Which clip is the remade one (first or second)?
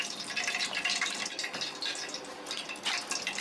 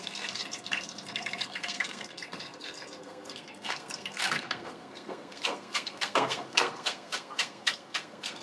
second